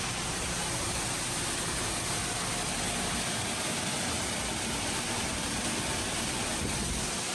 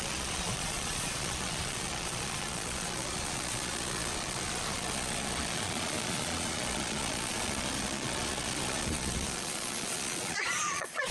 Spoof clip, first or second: second